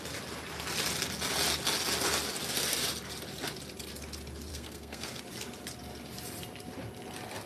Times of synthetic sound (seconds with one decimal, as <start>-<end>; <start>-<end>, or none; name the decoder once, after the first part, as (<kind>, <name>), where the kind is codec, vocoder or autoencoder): 4.5-5.2 (codec, SNAC)